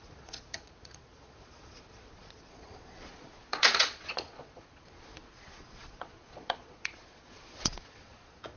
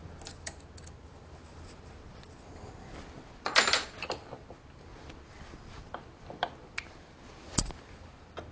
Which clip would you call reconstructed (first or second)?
first